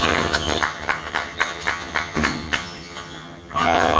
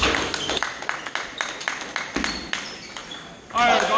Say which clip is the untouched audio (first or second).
second